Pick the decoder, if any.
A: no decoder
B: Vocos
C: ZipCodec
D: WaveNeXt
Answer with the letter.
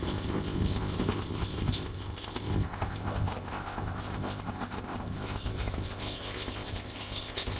C